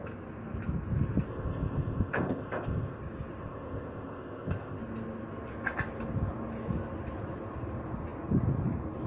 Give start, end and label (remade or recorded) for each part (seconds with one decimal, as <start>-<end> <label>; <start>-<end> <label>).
0.0-1.3 recorded; 1.3-3.0 remade; 3.0-3.4 recorded; 3.4-4.8 remade; 4.8-9.1 recorded